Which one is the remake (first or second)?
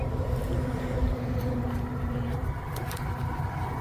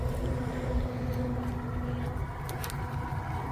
first